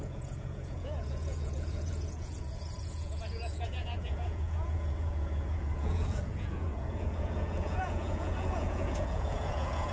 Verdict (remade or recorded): remade